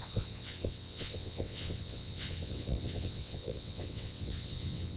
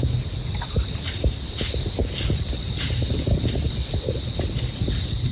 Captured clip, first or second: second